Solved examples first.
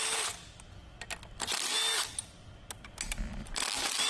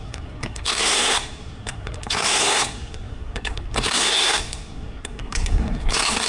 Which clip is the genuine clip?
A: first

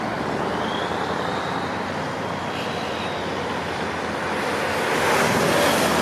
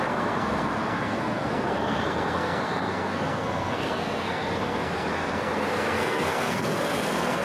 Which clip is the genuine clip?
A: first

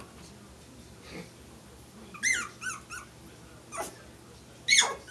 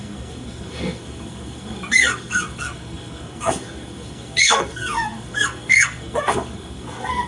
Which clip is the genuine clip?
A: first